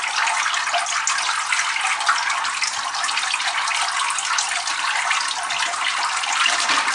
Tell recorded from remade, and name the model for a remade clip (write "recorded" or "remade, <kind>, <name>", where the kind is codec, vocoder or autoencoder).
recorded